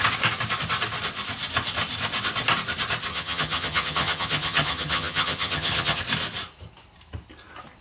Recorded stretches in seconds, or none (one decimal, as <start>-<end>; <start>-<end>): 0.0-3.1; 6.0-7.8